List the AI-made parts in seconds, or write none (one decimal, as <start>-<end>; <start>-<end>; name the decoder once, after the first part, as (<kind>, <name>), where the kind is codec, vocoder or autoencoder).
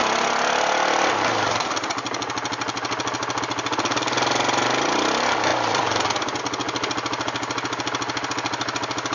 none